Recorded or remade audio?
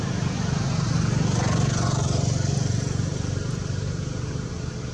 recorded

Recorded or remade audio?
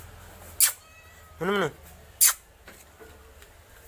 recorded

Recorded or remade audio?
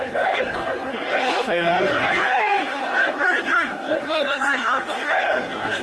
remade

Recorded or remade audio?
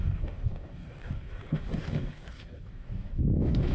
remade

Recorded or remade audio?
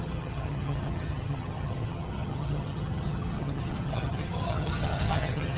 remade